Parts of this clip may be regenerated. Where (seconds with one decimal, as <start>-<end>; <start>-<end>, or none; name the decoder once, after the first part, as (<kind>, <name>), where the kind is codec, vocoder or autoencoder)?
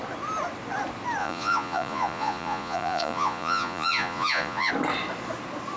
1.2-4.7 (vocoder, Vocos)